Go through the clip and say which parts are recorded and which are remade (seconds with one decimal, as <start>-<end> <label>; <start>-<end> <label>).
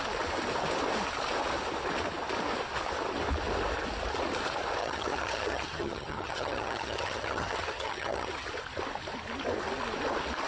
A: 0.0-4.8 recorded; 4.8-8.5 remade; 8.5-10.5 recorded